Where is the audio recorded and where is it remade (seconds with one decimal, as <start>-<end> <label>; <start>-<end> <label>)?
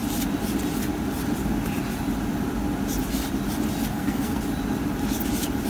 0.0-3.9 recorded; 3.9-4.4 remade; 4.4-5.7 recorded